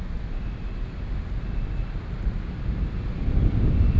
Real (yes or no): yes